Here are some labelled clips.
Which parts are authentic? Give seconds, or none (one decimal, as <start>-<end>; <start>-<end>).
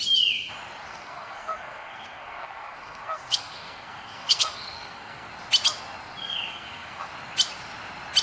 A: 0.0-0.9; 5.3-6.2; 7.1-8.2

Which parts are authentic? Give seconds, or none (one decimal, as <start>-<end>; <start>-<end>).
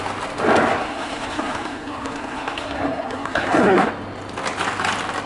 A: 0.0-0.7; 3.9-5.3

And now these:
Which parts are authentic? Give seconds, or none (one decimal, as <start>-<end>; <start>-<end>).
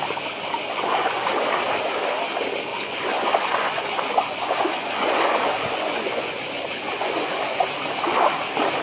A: 0.0-0.7; 1.3-2.7; 7.6-8.8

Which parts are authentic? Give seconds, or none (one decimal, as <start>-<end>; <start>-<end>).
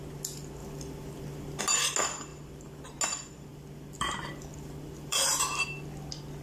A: 0.0-0.6; 1.6-3.5; 5.3-6.4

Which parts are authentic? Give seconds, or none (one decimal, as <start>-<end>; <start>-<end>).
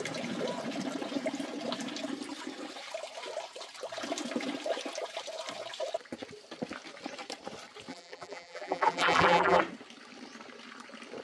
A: 0.0-7.9; 9.6-11.2